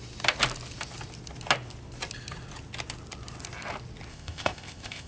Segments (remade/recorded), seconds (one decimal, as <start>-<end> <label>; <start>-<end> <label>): 0.0-4.1 recorded; 4.1-5.1 remade